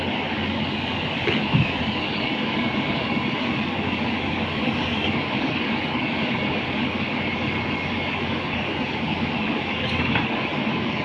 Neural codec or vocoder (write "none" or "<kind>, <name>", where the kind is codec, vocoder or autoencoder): codec, DAC